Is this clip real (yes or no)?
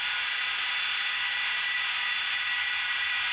yes